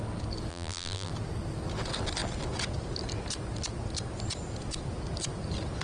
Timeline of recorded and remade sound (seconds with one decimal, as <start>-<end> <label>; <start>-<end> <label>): 0.0-0.5 recorded; 0.5-1.1 remade; 1.1-5.8 recorded